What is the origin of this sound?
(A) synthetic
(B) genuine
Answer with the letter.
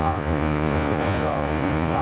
A